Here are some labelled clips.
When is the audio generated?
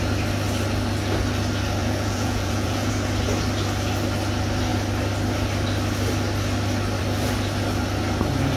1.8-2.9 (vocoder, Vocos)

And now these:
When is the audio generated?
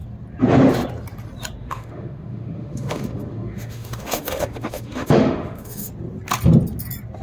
1.6-5.9 (autoencoder, DAC-VAE)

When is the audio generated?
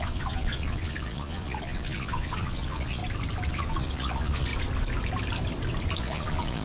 0.0-3.0 (vocoder, Vocos); 3.5-4.5; 6.0-6.6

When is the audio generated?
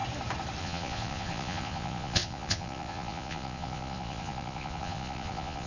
0.6-5.7 (vocoder, Vocos)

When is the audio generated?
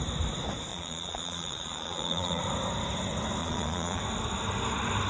0.7-2.4 (vocoder, Vocos); 3.4-4.0